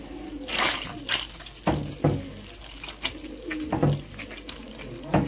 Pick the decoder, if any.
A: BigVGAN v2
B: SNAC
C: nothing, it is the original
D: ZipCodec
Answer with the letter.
C